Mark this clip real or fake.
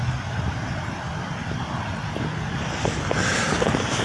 real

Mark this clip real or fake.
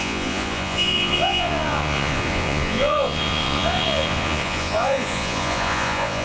fake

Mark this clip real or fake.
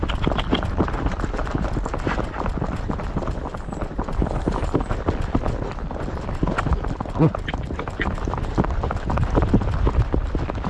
real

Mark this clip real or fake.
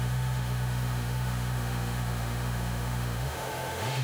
fake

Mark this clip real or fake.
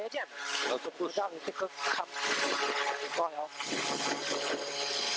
real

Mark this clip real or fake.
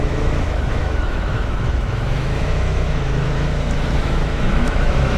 fake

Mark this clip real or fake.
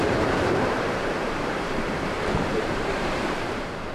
fake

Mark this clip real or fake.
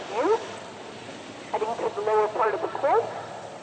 fake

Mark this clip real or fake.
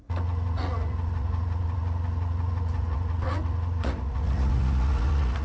fake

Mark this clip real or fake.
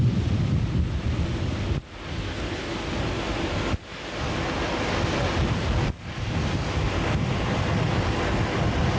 real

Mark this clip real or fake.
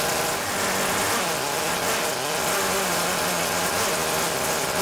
real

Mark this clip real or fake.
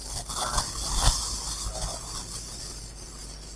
real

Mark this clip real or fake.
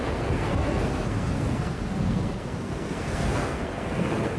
fake